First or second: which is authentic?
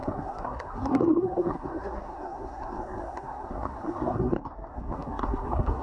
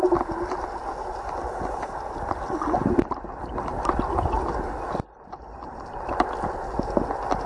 second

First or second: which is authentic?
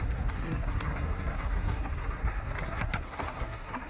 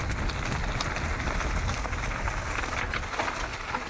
second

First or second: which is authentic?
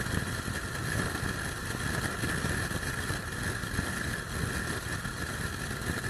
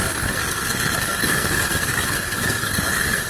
first